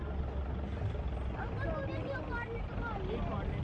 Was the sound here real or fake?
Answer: real